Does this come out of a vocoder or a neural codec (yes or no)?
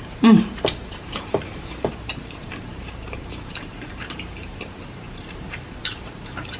yes